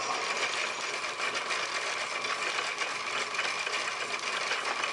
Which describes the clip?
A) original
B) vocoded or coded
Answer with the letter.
B